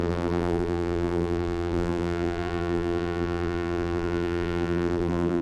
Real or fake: fake